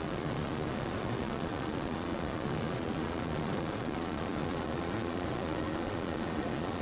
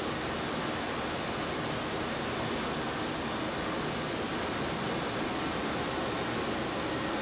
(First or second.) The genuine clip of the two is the second